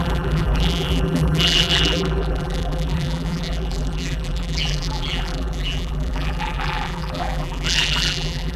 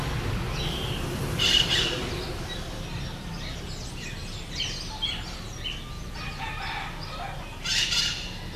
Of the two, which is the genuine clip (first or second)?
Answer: second